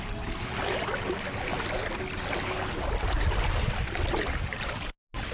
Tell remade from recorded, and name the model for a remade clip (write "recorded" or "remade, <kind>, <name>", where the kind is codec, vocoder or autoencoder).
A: recorded